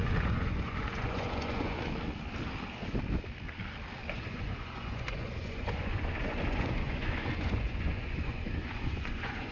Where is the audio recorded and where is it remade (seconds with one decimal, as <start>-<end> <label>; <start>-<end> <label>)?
0.0-1.8 remade; 1.8-4.0 recorded; 4.0-9.5 remade